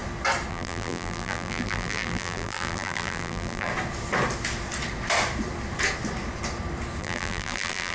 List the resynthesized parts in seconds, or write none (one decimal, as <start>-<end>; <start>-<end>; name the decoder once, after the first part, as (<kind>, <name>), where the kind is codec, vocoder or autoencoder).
0.5-3.7 (vocoder, BigVGAN v2); 7.0-7.9